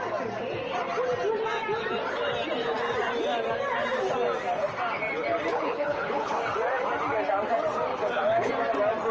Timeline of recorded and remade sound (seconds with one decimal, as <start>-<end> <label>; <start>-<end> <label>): 0.0-5.5 recorded; 5.5-6.4 remade; 6.4-7.9 recorded; 7.9-8.5 remade; 8.5-9.1 recorded